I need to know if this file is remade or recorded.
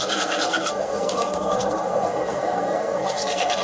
remade